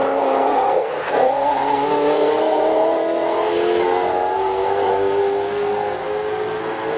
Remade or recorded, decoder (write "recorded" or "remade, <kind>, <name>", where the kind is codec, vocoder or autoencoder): remade, codec, SNAC